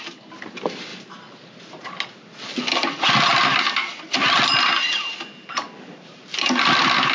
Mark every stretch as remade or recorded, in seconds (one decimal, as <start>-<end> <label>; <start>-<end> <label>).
0.0-7.1 recorded